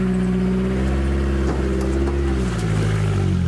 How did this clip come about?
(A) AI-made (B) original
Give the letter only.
B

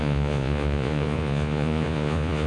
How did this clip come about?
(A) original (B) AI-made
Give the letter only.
B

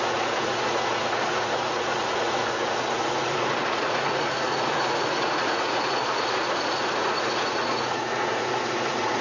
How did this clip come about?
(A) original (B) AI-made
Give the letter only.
B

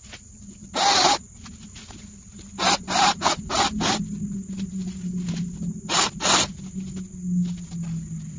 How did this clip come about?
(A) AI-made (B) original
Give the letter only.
B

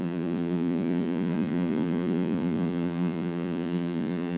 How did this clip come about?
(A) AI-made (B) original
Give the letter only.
A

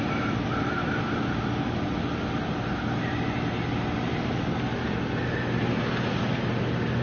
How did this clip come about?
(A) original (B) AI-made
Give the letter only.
A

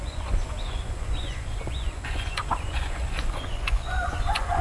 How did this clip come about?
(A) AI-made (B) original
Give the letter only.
A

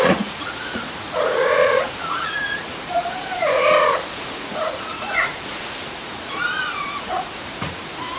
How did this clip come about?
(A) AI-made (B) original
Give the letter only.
A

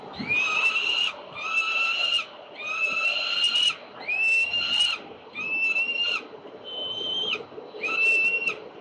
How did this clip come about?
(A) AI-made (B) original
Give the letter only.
B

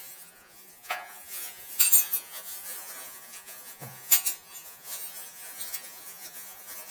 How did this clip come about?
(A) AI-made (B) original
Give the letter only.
A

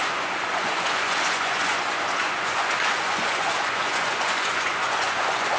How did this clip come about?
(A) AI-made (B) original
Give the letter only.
A